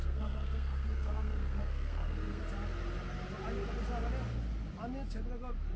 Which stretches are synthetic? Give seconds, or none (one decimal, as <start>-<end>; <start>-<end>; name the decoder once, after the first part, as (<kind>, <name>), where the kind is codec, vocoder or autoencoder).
0.0-2.4 (codec, SNAC)